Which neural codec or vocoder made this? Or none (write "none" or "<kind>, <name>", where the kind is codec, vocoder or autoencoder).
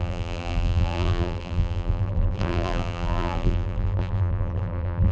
vocoder, BigVGAN v2